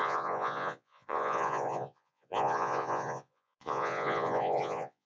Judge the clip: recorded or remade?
remade